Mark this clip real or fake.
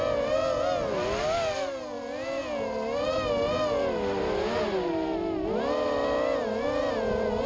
real